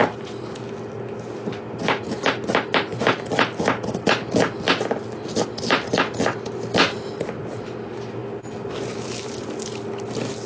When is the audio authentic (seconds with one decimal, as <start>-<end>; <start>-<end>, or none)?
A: 0.0-10.5